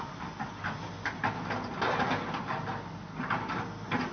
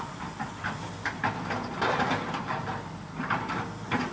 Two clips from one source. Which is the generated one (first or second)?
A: second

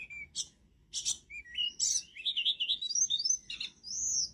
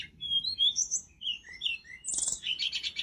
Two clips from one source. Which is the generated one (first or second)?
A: second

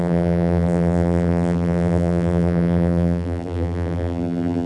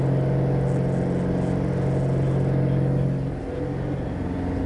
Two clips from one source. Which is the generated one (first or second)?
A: first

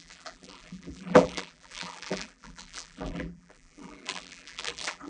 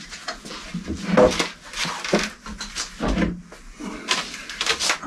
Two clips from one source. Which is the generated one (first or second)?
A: first